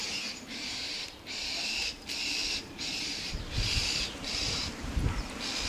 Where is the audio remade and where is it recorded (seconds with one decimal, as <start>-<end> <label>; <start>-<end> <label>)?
0.0-2.0 remade; 2.0-2.4 recorded; 2.4-5.0 remade; 5.0-5.7 recorded